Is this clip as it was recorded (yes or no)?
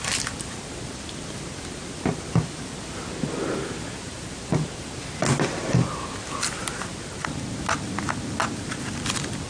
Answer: yes